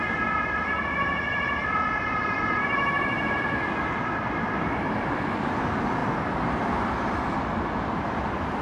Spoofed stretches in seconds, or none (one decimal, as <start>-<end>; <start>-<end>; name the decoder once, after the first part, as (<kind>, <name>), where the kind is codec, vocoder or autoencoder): none